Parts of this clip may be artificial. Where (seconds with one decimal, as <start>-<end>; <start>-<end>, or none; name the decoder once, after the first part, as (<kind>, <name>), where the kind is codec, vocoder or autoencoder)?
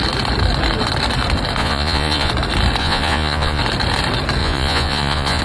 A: 1.6-2.3 (vocoder, Vocos); 2.8-3.6; 4.4-5.4